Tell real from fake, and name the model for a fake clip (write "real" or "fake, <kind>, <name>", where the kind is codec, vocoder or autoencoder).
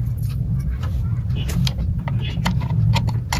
real